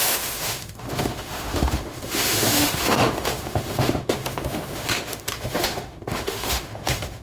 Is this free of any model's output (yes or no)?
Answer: no